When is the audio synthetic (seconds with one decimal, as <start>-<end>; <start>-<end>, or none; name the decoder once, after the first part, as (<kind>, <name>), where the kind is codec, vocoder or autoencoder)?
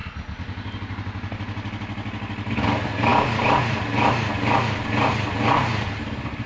none